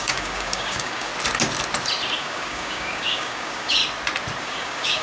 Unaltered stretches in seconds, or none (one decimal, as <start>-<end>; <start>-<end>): 1.1-2.2; 3.8-4.4